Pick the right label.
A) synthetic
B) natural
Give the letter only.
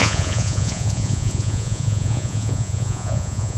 A